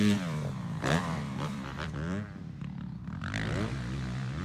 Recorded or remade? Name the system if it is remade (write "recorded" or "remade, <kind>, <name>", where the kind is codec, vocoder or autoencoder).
remade, vocoder, BigVGAN v2